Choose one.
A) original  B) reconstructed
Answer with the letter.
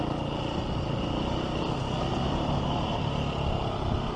A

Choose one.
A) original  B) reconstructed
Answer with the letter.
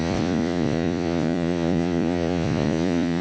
B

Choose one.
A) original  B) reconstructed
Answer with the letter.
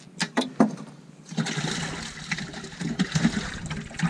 A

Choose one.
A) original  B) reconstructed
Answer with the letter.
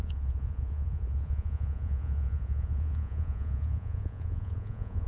B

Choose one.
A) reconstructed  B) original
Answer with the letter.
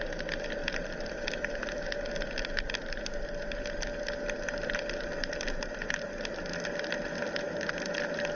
B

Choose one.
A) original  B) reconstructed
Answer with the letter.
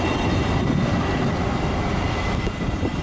A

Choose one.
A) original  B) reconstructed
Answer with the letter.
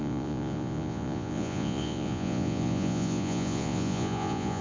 B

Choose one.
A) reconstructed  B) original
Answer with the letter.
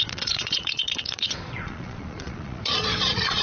A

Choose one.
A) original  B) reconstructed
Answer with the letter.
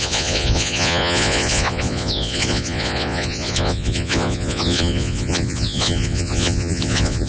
B